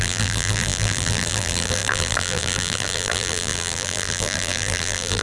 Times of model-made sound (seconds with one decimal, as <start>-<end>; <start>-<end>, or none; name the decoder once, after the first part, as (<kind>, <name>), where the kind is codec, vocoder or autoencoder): 0.0-5.2 (vocoder, BigVGAN v2)